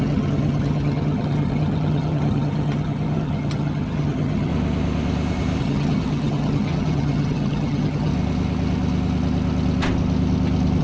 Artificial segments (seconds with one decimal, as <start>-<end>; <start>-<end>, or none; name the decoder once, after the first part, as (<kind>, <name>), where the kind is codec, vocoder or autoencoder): 0.0-4.5 (vocoder, HiFi-GAN); 5.6-8.1